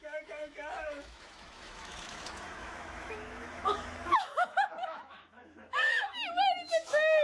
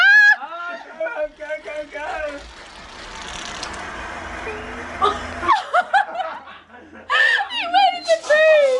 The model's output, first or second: first